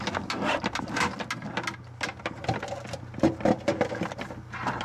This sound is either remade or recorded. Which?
recorded